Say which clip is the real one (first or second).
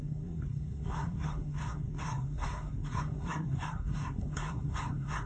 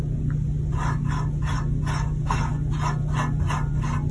second